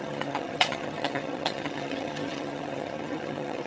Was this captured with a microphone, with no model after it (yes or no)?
no